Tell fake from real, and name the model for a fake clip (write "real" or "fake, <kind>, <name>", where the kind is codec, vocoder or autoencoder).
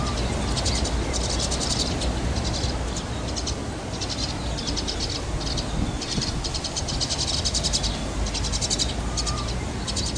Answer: real